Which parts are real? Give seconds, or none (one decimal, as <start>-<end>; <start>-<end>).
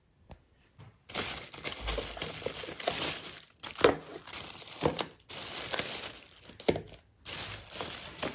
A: 0.0-4.1; 5.3-8.3